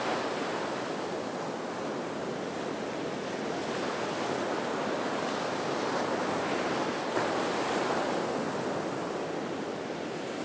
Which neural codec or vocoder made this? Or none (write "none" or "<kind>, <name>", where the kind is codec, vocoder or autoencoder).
none